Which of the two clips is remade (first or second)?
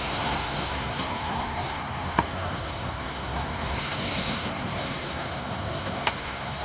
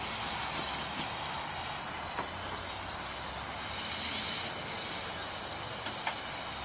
first